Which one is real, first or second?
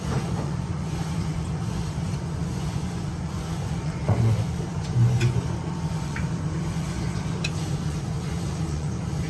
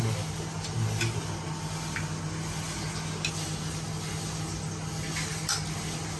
second